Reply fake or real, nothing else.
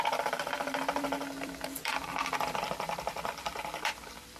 fake